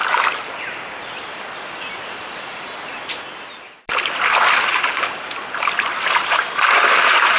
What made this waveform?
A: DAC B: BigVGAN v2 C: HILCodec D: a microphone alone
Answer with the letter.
D